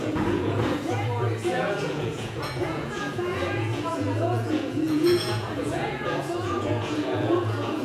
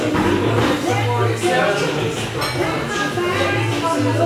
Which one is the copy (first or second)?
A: first